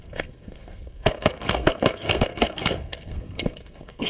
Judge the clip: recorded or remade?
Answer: remade